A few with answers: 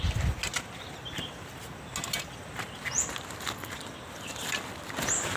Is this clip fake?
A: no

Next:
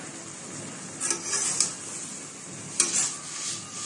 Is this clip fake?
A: no